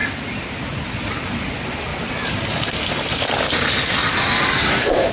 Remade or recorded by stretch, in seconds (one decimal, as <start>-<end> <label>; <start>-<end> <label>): 0.0-1.9 recorded; 1.9-2.8 remade; 2.8-4.0 recorded; 4.0-5.1 remade